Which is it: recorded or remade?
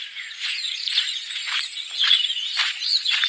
remade